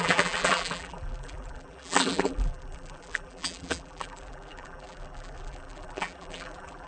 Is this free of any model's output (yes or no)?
no